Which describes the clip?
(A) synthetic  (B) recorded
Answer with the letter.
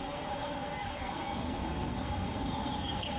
A